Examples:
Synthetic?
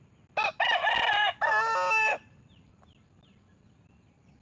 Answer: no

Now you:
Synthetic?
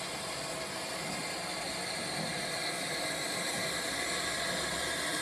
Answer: no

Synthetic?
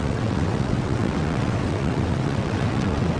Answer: yes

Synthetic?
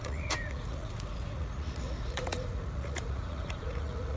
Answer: yes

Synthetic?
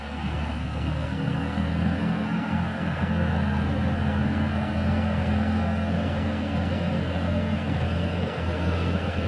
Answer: yes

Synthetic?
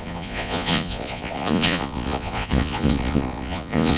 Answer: yes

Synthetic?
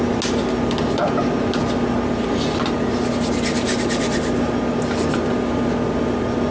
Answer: no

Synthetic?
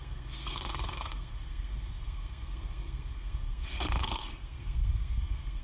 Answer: yes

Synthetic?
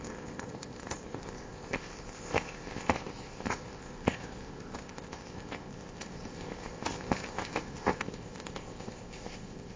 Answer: yes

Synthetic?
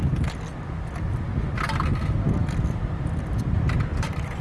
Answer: no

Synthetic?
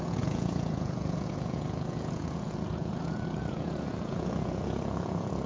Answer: yes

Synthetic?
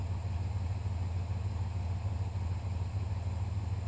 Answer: no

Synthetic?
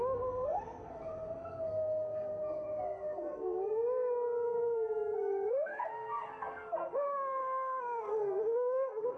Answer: yes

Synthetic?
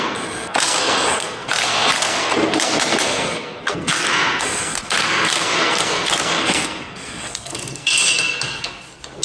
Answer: yes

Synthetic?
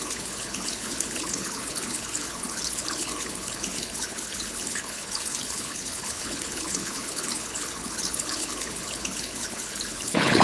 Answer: yes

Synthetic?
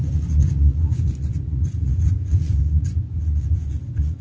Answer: yes